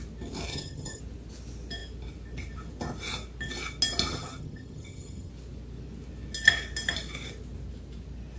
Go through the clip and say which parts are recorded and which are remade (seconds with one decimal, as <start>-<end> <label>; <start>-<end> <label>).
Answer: 0.0-0.5 recorded; 0.5-1.0 remade; 1.0-4.1 recorded; 4.1-5.3 remade; 5.3-8.4 recorded